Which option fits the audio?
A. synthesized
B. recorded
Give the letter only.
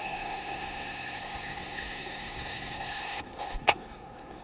A